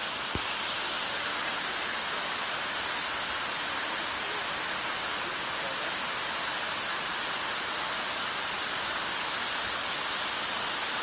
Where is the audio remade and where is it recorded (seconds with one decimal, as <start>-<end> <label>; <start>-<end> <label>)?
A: 0.0-11.0 recorded